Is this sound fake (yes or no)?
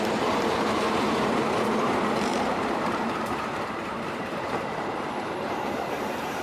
yes